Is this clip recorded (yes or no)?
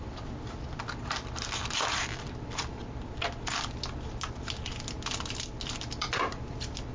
yes